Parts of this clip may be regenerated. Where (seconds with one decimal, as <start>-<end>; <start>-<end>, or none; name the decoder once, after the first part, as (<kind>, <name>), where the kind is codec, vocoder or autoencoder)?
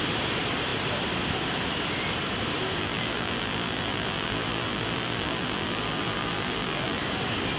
2.8-7.0 (vocoder, BigVGAN v2)